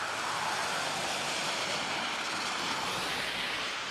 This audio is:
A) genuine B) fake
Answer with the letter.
A